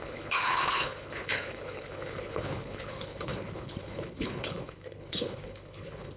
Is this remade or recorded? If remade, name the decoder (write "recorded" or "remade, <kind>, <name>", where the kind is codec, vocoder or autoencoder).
remade, codec, HILCodec